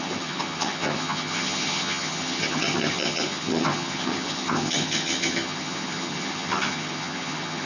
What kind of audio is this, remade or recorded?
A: remade